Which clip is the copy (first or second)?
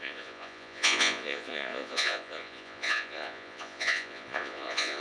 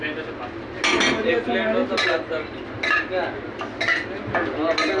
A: first